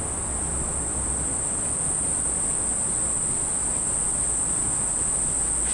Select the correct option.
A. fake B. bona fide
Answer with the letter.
B